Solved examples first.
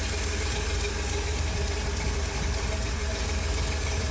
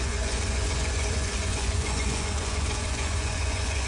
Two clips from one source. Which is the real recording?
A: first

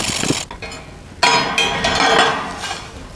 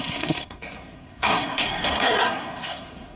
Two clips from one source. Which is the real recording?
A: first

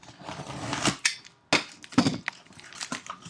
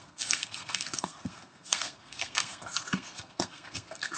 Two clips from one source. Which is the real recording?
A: first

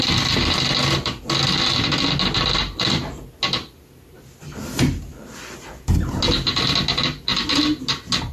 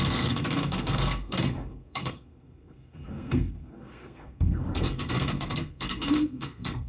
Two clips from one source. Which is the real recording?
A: first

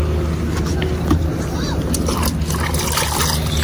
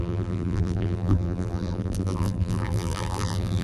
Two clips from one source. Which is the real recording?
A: first